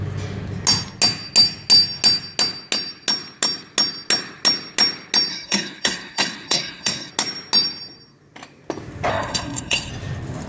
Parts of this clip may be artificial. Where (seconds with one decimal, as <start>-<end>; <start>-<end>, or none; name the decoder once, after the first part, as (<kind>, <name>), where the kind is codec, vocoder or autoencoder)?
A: 5.3-7.1 (codec, SNAC); 9.1-9.9

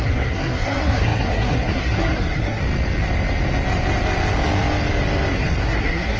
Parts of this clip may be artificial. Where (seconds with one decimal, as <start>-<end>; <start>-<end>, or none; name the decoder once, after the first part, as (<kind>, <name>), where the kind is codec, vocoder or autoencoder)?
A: 0.0-2.6 (codec, SNAC); 5.3-6.2